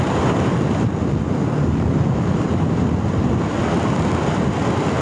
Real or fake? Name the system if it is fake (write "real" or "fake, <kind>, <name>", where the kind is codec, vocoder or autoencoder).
real